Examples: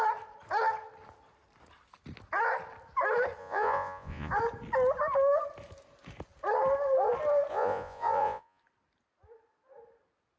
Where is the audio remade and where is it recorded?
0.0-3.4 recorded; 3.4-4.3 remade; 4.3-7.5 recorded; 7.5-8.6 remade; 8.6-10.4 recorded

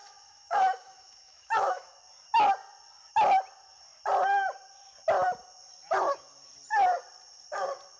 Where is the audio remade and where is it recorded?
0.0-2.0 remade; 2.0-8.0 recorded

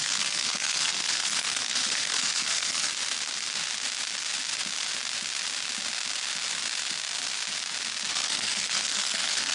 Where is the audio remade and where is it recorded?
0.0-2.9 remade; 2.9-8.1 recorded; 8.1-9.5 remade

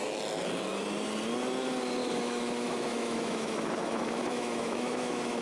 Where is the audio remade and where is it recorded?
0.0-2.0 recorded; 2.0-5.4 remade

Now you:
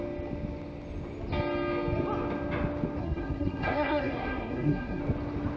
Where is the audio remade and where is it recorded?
0.0-3.0 recorded; 3.0-5.0 remade; 5.0-5.6 recorded